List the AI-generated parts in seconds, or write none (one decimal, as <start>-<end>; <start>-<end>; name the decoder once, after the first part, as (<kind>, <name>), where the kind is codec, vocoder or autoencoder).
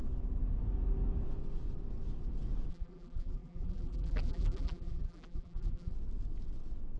2.7-5.9 (vocoder, BigVGAN v2)